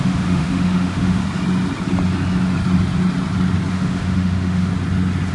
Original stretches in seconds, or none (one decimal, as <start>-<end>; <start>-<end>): 1.2-3.7; 4.7-5.3